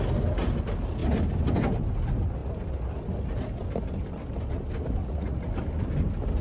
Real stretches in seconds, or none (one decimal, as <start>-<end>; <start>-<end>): 0.0-5.0; 5.5-6.4